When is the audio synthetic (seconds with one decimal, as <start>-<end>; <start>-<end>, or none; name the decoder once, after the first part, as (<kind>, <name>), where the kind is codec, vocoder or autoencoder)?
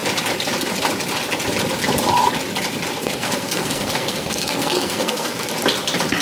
3.0-5.5 (codec, SNAC)